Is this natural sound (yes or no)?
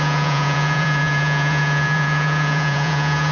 no